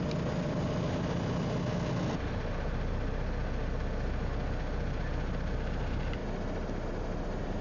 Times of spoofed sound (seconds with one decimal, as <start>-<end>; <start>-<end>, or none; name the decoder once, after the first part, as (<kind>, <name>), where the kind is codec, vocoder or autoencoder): none